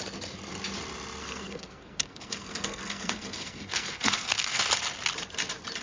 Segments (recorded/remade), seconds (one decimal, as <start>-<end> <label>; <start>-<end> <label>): 0.0-1.2 recorded; 1.2-4.7 remade; 4.7-5.8 recorded